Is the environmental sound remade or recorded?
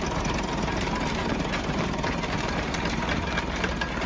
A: remade